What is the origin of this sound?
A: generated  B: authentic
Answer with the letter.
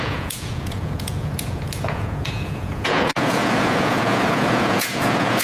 A